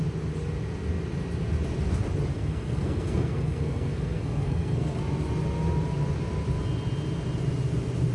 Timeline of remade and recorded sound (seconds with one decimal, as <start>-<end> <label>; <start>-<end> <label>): 0.0-2.3 recorded; 2.3-5.0 remade; 5.0-8.1 recorded